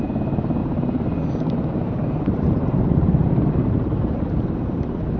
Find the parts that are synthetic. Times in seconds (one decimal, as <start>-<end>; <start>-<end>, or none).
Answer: 0.6-3.7